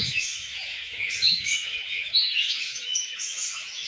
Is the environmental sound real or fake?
fake